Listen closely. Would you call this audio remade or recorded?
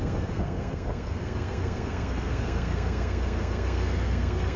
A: remade